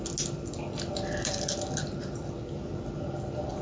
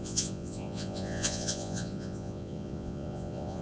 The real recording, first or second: first